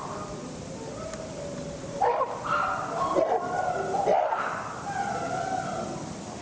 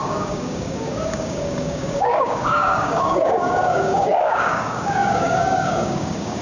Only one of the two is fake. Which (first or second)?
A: second